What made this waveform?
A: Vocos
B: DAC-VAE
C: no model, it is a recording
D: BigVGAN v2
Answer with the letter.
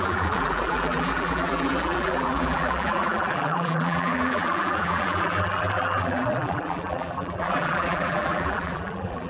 D